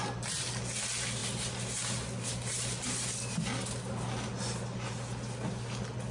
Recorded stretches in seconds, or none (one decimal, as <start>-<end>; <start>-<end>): 0.0-6.1